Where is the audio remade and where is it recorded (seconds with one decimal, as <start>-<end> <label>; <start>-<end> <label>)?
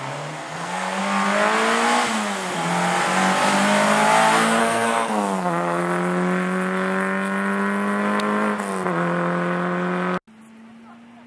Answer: 0.0-0.4 recorded; 0.4-1.0 remade; 1.0-4.6 recorded; 4.6-5.8 remade; 5.8-11.3 recorded